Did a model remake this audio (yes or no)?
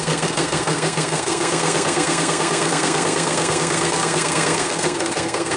yes